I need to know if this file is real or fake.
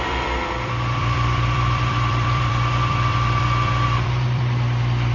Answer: fake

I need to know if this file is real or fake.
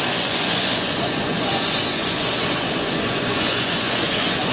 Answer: fake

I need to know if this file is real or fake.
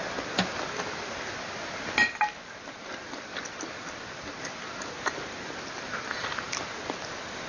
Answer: real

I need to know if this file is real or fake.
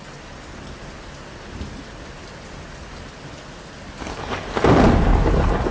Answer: real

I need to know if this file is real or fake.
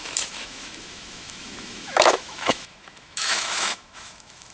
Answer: fake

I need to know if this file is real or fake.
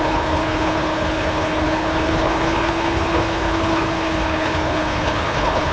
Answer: fake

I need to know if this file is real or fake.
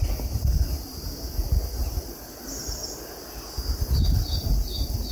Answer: real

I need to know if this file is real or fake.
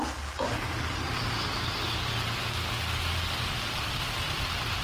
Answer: real